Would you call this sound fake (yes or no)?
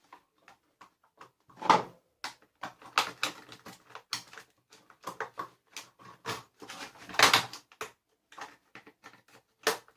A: no